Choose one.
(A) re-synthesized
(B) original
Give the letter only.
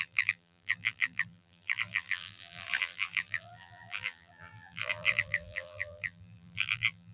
A